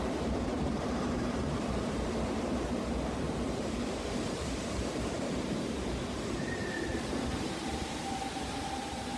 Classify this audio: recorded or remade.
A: remade